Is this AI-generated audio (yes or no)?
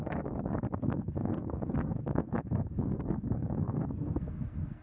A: yes